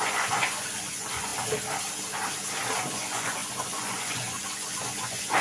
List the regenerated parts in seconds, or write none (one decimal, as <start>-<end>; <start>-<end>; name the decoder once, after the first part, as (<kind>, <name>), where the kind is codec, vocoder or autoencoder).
0.0-1.3 (vocoder, Vocos); 2.9-5.4